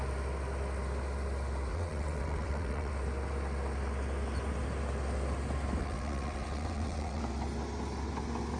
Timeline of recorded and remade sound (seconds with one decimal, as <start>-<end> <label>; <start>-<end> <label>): 0.0-1.7 recorded; 1.7-2.9 remade; 2.9-5.8 recorded; 5.8-7.2 remade; 7.2-8.6 recorded